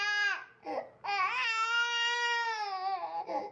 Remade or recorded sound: recorded